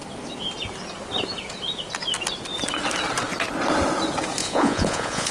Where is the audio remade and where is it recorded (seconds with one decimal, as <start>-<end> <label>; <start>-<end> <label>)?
0.0-4.4 recorded; 4.4-5.3 remade